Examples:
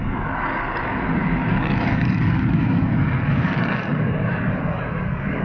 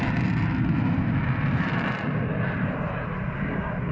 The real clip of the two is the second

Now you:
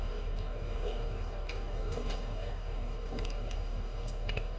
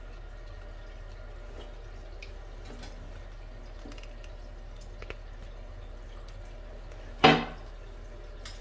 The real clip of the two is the second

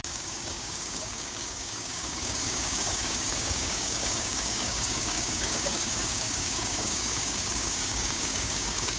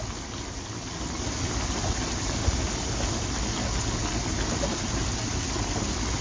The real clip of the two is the second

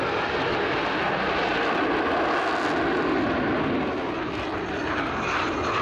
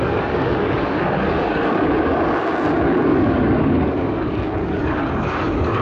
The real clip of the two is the first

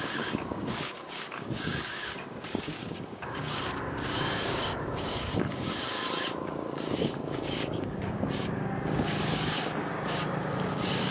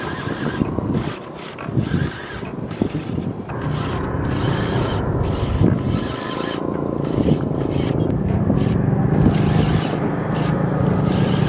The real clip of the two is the second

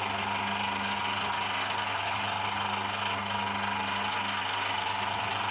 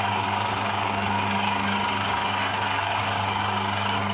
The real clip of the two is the first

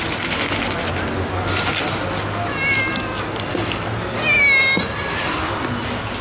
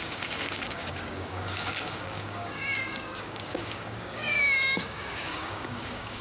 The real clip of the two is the first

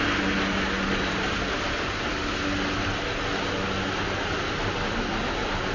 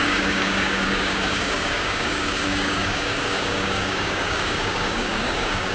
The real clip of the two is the first